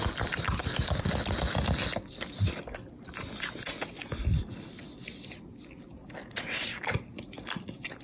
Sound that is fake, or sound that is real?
real